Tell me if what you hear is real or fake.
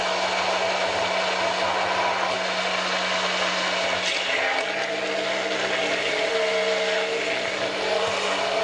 real